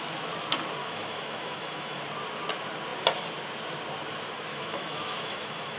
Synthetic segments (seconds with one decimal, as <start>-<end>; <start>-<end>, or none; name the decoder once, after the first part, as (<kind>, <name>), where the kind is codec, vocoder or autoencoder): 0.8-2.0 (autoencoder, DAC-VAE); 4.5-5.8

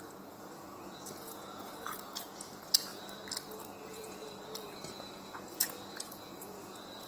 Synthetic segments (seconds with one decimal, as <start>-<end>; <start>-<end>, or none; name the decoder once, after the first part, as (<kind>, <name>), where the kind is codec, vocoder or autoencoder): 0.0-2.9 (vocoder, Vocos); 3.8-4.2; 4.9-7.1

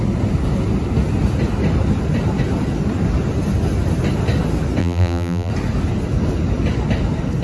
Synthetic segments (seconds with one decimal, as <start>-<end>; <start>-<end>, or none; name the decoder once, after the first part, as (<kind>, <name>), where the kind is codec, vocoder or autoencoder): 4.8-5.5 (vocoder, BigVGAN v2)

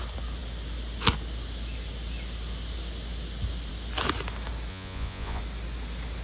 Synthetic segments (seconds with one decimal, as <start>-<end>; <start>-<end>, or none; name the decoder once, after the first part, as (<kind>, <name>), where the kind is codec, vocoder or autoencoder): 4.7-5.4 (vocoder, Vocos)